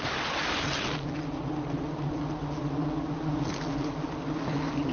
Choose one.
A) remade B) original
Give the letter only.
B